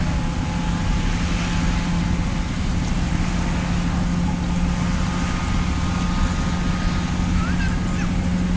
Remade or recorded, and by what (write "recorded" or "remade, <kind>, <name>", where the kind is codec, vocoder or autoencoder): recorded